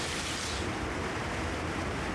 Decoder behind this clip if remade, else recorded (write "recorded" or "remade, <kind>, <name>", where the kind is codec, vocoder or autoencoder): recorded